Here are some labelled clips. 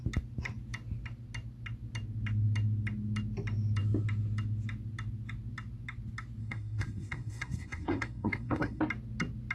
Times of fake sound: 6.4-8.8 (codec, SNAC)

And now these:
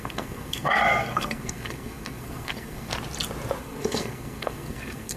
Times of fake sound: 0.0-2.9 (codec, SNAC); 3.6-5.2